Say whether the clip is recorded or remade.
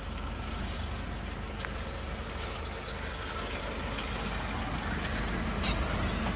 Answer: recorded